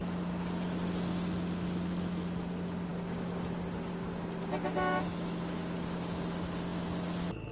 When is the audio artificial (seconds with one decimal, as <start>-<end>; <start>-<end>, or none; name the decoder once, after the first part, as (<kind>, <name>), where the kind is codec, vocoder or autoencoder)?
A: none